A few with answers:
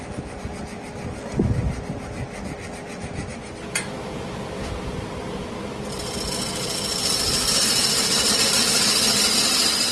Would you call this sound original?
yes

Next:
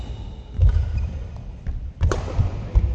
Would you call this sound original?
yes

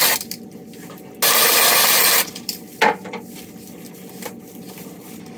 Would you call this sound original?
yes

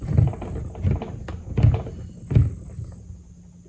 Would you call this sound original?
yes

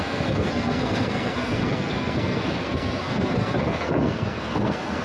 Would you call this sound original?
no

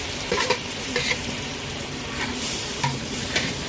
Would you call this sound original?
no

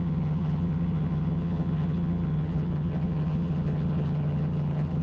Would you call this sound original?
no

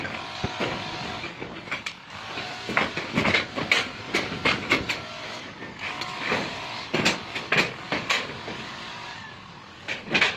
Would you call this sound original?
no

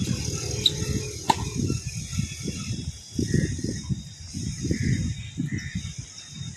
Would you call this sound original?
yes